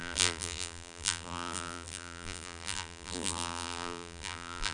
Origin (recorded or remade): remade